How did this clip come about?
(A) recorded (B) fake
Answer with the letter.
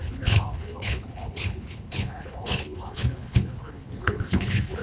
B